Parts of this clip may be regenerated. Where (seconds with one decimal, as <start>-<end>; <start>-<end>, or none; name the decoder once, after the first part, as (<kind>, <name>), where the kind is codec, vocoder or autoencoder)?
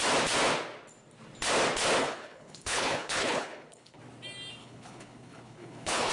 2.0-4.0 (codec, HILCodec); 4.6-6.1